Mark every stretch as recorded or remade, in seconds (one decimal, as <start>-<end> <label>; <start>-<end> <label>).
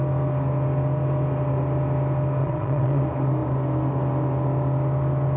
0.0-2.4 recorded; 2.4-3.0 remade; 3.0-5.4 recorded